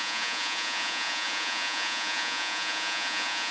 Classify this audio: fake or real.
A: fake